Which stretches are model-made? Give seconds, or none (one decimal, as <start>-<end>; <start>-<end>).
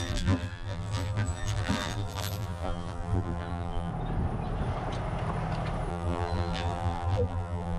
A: 0.0-3.9; 5.9-7.8